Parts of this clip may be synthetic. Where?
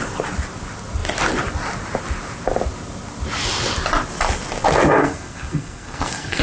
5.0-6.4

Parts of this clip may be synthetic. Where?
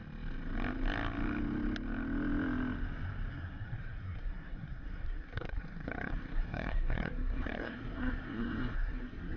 3.3-9.4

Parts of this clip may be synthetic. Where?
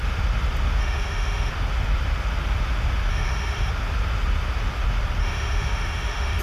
0.8-1.5; 3.1-3.7; 5.2-6.4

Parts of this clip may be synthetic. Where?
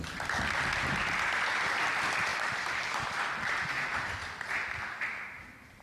2.3-3.7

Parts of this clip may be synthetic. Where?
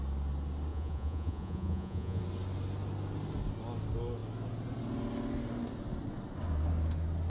0.7-2.2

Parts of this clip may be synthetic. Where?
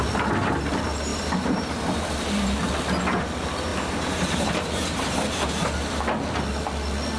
1.1-2.7; 3.7-6.0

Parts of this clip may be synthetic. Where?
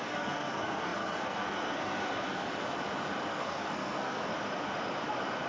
0.0-2.5; 3.3-4.3